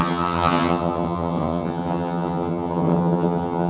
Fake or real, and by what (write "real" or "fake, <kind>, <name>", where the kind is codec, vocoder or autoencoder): fake, vocoder, HiFi-GAN